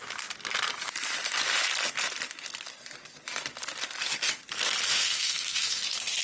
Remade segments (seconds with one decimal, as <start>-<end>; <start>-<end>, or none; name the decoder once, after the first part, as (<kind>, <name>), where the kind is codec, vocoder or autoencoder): 4.9-5.8 (autoencoder, DAC-VAE)